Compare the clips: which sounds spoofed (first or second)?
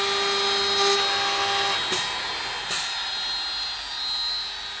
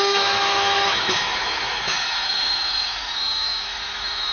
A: second